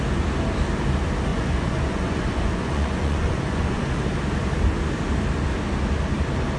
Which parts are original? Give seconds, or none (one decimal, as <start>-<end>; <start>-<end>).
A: 0.0-1.3; 3.8-6.6